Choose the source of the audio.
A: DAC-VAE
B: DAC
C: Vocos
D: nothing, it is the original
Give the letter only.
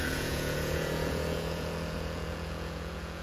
C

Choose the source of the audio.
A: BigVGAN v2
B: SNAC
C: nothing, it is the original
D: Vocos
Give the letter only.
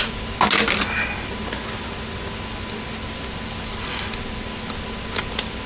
C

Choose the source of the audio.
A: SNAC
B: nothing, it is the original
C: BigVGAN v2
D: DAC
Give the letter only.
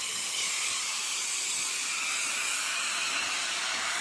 D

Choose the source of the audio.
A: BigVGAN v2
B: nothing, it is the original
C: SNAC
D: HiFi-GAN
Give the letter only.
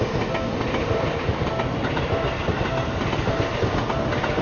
B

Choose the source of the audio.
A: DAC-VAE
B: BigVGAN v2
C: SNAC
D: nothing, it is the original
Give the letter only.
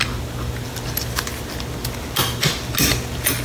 D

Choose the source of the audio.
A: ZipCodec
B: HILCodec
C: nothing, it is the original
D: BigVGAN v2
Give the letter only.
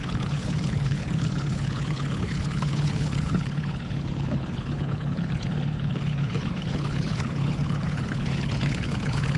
B